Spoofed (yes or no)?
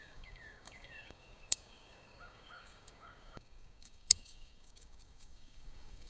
yes